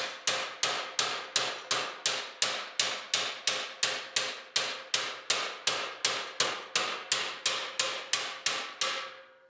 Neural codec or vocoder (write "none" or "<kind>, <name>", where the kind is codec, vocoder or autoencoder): none